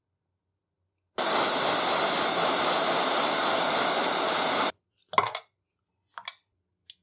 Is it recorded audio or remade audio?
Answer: recorded